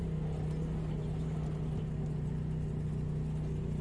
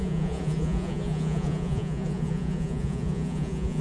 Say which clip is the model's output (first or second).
second